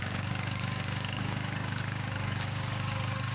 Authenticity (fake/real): fake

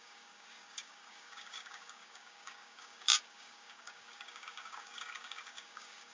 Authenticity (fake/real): fake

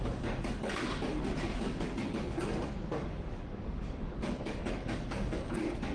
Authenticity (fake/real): fake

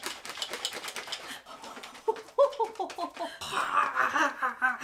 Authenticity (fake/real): real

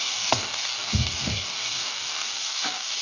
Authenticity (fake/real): fake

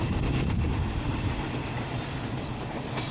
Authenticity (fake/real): real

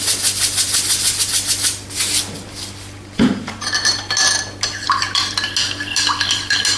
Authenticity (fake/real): real